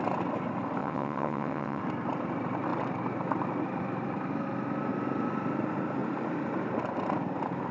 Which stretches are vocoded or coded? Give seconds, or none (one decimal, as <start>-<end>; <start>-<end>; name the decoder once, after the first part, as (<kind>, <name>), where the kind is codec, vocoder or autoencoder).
0.8-1.8 (vocoder, WaveNeXt)